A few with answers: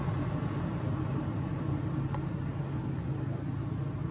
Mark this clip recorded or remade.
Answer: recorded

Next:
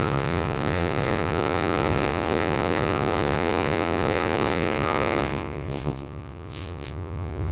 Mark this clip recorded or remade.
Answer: remade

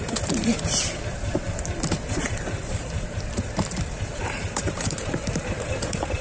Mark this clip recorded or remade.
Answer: remade